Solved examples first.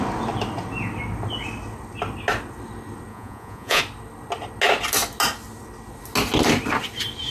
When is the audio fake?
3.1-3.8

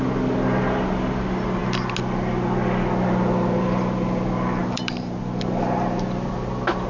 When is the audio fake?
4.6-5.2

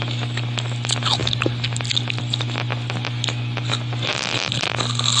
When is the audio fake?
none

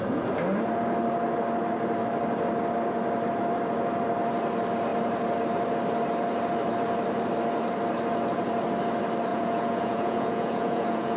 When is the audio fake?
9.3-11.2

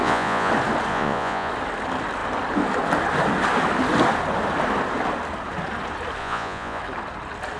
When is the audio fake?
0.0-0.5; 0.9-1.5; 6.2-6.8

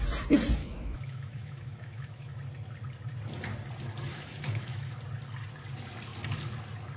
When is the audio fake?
0.6-2.4; 4.1-4.9

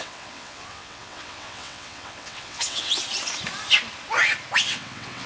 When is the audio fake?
0.0-3.0; 4.6-5.3